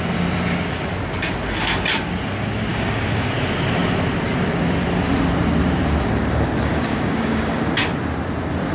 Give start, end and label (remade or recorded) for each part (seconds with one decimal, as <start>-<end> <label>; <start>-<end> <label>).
0.0-2.7 recorded; 2.7-3.3 remade; 3.3-6.7 recorded; 6.7-7.6 remade; 7.6-8.7 recorded